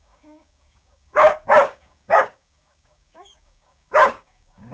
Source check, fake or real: fake